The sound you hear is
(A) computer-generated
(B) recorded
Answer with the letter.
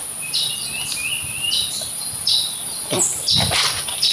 B